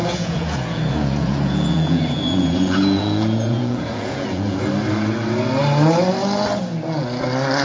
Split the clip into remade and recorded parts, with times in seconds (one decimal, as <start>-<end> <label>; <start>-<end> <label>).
0.0-4.6 remade; 4.6-7.6 recorded